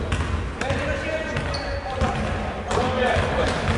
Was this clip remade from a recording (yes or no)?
no